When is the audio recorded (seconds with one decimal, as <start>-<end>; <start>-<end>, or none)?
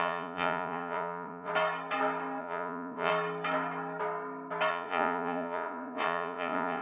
1.5-2.4; 3.1-4.7